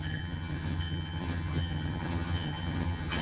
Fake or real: fake